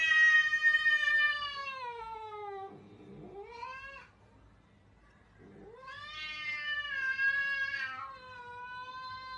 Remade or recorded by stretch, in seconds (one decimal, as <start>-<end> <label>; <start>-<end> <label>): 0.0-1.6 recorded; 1.6-2.7 remade; 2.7-9.4 recorded